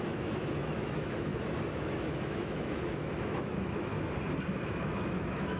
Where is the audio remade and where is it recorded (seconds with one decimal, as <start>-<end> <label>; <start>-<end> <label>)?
0.0-3.9 remade; 3.9-4.7 recorded; 4.7-5.6 remade